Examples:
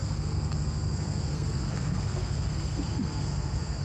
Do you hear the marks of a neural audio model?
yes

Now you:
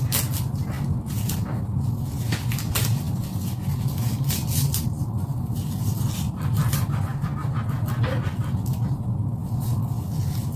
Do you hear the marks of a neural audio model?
no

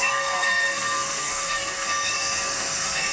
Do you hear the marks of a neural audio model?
yes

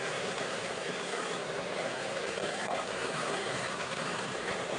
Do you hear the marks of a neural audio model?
yes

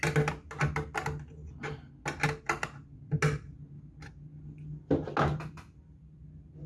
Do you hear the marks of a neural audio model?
no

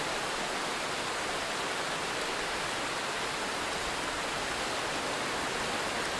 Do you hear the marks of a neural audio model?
no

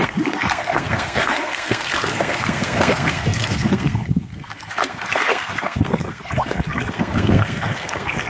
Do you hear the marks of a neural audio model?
yes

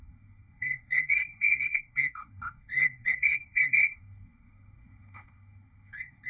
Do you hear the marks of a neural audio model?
yes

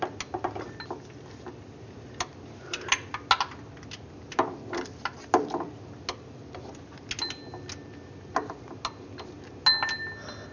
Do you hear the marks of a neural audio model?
no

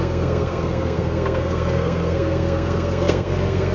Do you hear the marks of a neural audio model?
yes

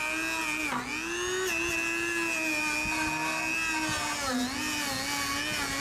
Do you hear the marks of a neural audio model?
no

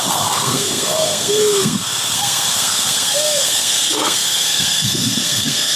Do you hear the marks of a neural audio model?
yes